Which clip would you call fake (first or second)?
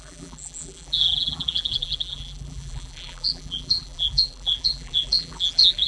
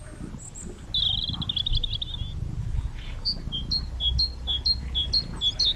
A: first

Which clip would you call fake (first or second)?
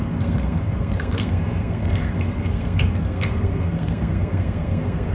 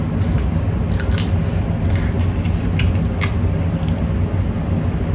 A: first